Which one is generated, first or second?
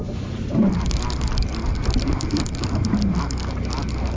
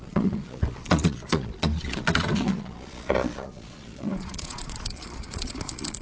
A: second